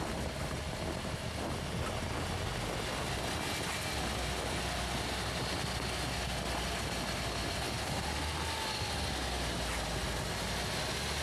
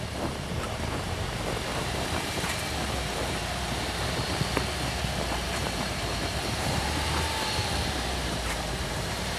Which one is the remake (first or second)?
second